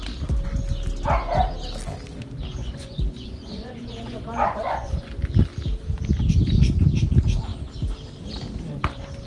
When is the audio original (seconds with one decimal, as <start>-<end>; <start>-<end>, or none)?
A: 0.0-2.6; 5.1-9.3